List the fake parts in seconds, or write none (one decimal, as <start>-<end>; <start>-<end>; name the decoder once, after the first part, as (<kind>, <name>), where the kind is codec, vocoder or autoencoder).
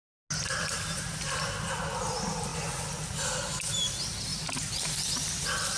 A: none